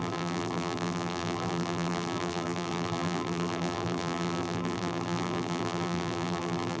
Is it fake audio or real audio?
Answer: fake